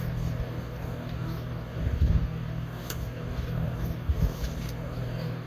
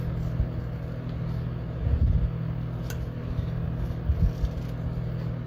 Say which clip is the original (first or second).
second